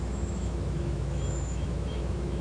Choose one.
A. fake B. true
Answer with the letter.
A